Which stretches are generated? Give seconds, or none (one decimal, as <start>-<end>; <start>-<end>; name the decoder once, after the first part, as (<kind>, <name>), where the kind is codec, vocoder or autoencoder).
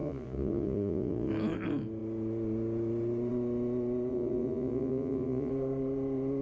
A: 0.0-1.3 (vocoder, Vocos); 4.1-5.5